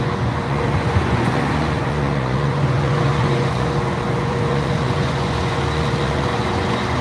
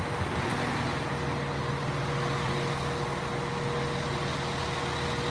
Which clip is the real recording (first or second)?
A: second